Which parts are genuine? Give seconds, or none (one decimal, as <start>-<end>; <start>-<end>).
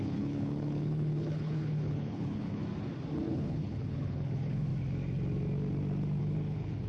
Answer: 2.6-3.3; 4.7-6.2